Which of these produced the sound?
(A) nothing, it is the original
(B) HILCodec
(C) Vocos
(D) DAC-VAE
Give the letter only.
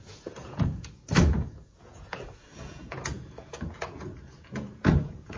C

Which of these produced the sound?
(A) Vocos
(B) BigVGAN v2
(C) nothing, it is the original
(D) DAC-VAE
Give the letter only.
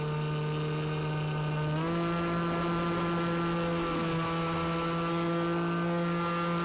C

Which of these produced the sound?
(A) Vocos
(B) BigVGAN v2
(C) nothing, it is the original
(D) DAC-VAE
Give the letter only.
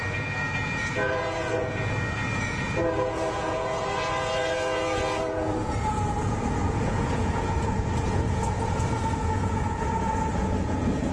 A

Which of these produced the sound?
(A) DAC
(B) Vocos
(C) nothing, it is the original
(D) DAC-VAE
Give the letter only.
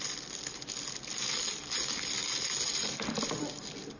C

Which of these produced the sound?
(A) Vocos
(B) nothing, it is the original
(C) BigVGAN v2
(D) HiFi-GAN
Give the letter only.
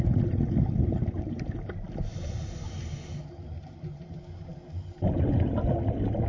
B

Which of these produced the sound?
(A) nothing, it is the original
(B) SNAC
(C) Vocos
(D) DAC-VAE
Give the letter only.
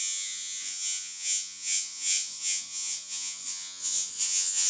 C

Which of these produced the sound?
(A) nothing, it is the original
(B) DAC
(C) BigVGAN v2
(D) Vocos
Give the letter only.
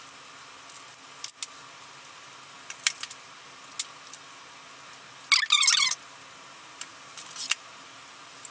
A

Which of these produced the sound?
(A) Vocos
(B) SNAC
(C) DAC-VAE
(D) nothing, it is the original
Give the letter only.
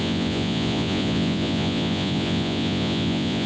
A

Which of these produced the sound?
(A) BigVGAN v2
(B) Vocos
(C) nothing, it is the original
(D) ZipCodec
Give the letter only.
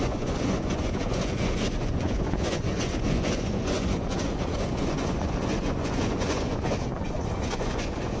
B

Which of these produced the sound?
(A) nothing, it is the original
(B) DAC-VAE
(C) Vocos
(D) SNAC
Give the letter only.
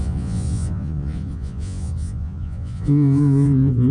C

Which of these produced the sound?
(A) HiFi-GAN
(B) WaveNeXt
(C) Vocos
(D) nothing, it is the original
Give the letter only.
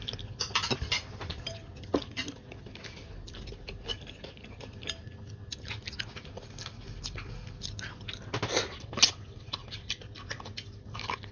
D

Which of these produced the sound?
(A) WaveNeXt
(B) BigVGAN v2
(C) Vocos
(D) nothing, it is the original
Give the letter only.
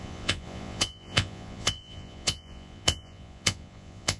C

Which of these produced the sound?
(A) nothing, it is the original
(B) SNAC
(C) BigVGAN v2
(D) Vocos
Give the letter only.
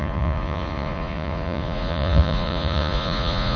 D